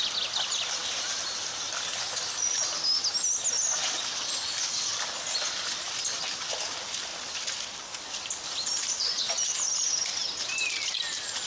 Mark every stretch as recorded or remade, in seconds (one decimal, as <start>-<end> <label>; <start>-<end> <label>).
0.0-2.6 remade; 2.6-6.0 recorded; 6.0-10.2 remade; 10.2-11.5 recorded